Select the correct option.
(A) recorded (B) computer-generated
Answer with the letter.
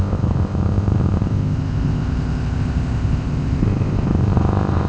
B